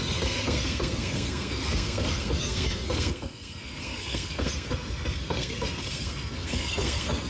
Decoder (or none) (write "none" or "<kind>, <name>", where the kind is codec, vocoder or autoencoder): codec, SNAC